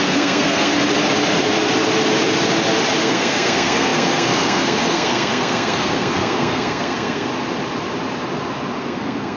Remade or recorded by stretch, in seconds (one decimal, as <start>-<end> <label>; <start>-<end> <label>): 0.0-0.7 remade; 0.7-3.0 recorded; 3.0-7.3 remade; 7.3-8.8 recorded; 8.8-9.4 remade